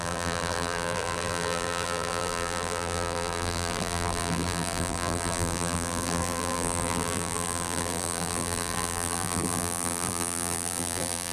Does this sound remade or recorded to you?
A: remade